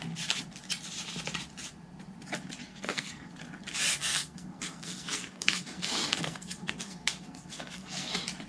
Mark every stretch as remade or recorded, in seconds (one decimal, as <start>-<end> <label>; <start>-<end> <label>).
0.0-2.7 recorded; 2.7-3.3 remade; 3.3-4.0 recorded; 4.0-8.1 remade; 8.1-8.5 recorded